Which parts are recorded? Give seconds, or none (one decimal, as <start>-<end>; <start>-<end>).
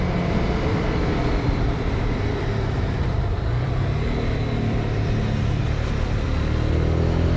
0.0-0.7; 5.1-7.4